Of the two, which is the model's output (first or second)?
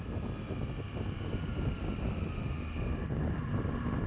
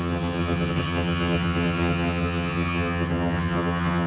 second